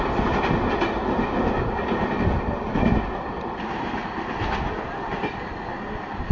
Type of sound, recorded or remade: recorded